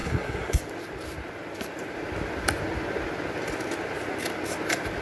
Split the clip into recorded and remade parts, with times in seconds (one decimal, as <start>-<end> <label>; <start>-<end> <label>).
0.0-0.6 remade; 0.6-5.0 recorded